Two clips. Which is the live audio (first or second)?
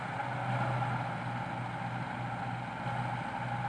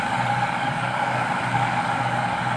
first